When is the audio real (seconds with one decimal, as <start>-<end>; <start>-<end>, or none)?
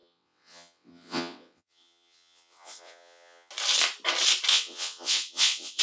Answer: 3.5-4.5